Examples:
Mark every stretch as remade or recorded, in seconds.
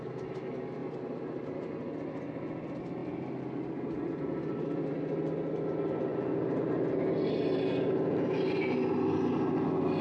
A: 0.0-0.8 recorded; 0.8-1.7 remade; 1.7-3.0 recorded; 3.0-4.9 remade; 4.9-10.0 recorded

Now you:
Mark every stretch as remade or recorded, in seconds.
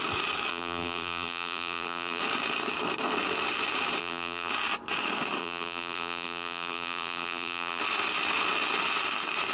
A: 0.0-0.5 recorded; 0.5-2.2 remade; 2.2-4.0 recorded; 4.0-4.5 remade; 4.5-5.4 recorded; 5.4-7.8 remade; 7.8-9.5 recorded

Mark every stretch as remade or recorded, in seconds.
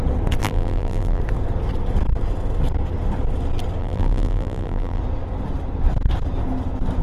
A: 0.0-0.4 recorded; 0.4-1.2 remade; 1.2-3.8 recorded; 3.8-5.0 remade; 5.0-7.0 recorded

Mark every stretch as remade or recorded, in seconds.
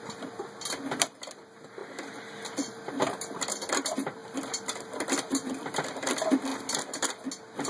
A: 0.0-1.8 remade; 1.8-2.9 recorded; 2.9-6.5 remade; 6.5-7.7 recorded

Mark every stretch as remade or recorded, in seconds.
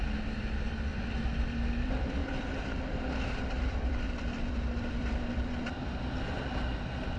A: 0.0-0.9 remade; 0.9-1.8 recorded; 1.8-7.2 remade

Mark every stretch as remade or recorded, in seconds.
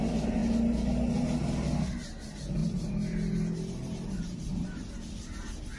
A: 0.0-2.6 recorded; 2.6-4.9 remade; 4.9-5.8 recorded